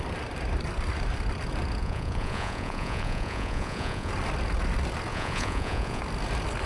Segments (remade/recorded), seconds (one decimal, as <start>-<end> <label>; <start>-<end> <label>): 0.0-1.8 recorded; 1.8-4.1 remade; 4.1-5.1 recorded; 5.1-6.0 remade; 6.0-6.7 recorded